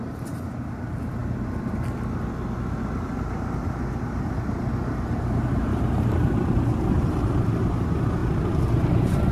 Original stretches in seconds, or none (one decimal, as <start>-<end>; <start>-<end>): 1.2-3.6; 8.2-9.3